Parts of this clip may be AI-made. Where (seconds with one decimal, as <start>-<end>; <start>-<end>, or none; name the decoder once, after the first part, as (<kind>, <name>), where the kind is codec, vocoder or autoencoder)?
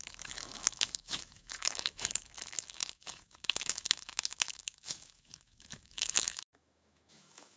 0.0-7.6 (autoencoder, DAC-VAE)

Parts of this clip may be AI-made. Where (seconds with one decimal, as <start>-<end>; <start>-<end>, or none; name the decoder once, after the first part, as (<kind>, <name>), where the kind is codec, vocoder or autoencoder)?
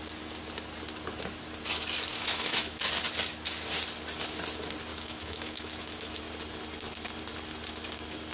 2.1-2.8 (autoencoder, DAC-VAE); 4.9-6.2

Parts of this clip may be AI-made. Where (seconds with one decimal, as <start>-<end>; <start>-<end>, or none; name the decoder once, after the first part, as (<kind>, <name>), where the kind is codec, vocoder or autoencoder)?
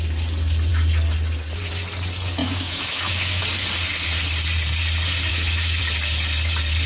2.4-3.4 (autoencoder, DAC-VAE); 5.3-5.8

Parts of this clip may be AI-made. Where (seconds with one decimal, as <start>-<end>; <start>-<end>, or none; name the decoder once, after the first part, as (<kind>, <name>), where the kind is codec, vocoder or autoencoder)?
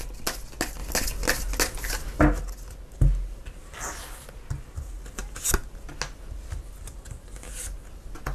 none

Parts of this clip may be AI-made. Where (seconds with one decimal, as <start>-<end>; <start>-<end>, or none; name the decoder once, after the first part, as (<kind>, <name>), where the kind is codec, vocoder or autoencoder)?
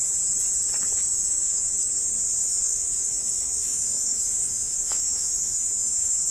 1.1-1.7 (autoencoder, DAC-VAE); 2.4-6.3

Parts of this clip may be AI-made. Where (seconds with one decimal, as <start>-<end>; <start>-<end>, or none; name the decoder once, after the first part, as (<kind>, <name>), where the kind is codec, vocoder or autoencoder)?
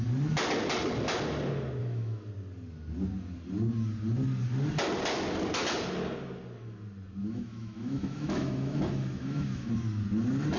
1.8-2.3 (autoencoder, DAC-VAE); 7.2-9.7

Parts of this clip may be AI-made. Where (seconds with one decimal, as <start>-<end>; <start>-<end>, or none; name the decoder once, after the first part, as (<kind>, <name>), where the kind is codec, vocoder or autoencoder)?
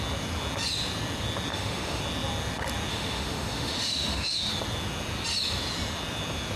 1.5-2.0 (autoencoder, DAC-VAE); 2.9-4.5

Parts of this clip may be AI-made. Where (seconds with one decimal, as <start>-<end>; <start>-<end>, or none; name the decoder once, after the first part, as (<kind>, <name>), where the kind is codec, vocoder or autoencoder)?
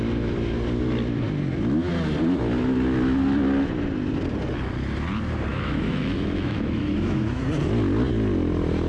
5.5-7.4 (autoencoder, DAC-VAE)